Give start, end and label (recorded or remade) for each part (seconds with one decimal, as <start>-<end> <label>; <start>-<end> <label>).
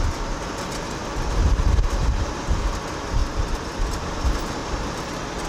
0.0-1.0 recorded; 1.0-2.5 remade; 2.5-3.2 recorded; 3.2-4.0 remade; 4.0-4.6 recorded; 4.6-5.5 remade